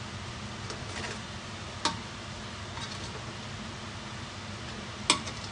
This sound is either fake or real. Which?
real